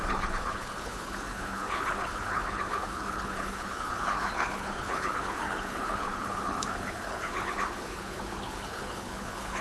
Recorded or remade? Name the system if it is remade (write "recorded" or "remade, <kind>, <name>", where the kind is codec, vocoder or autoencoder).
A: remade, codec, HILCodec